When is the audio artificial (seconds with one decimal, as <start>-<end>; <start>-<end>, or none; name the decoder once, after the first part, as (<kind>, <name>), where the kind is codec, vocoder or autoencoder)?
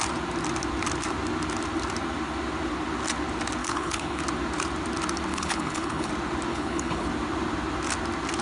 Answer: 3.6-4.2 (codec, HILCodec); 5.3-6.1; 6.5-7.1